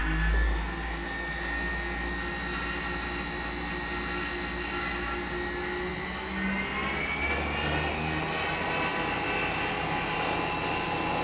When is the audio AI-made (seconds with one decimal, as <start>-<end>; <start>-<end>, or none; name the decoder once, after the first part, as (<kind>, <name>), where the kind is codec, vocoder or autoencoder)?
none